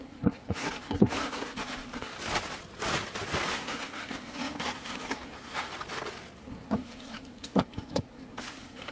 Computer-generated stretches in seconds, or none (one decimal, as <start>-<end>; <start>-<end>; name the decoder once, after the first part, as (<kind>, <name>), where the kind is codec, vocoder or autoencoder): 0.0-2.1 (codec, SNAC); 3.5-5.7; 6.4-8.9